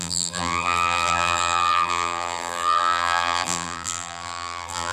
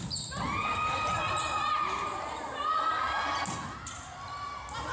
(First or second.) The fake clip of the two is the first